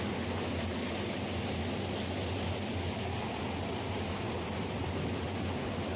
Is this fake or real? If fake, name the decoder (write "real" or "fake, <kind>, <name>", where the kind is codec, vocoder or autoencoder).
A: real